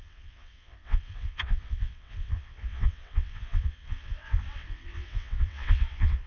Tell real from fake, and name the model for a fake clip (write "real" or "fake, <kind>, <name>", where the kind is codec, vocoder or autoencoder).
fake, vocoder, WaveNeXt